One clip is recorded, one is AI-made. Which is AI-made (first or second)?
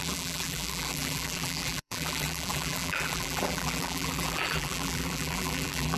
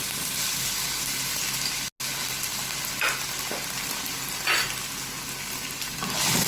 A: first